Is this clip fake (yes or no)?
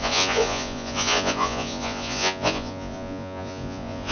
yes